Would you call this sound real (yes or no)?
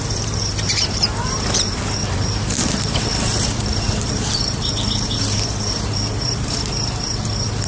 no